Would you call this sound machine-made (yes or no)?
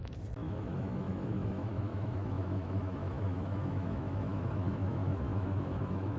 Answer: yes